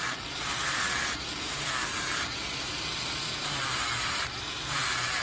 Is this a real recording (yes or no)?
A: no